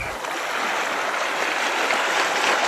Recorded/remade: recorded